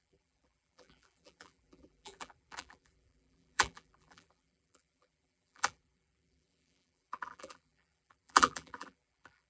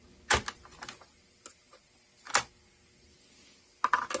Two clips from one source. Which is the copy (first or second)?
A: first